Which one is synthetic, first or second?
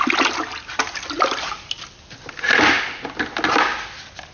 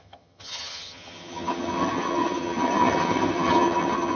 second